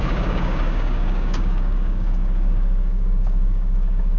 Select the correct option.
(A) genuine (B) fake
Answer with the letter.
B